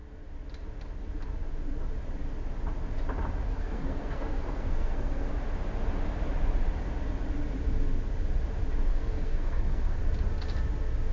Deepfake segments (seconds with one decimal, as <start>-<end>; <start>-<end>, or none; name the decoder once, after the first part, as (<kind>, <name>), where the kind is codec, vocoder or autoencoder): 3.5-5.3 (codec, SNAC); 8.9-10.0